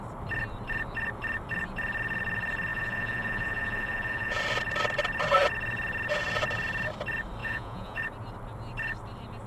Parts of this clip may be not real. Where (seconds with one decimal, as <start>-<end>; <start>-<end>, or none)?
2.7-4.4; 7.4-8.0